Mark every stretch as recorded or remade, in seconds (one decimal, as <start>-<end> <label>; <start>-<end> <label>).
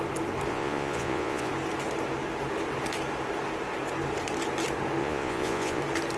0.0-0.5 recorded; 0.5-1.5 remade; 1.5-5.0 recorded; 5.0-5.8 remade; 5.8-6.2 recorded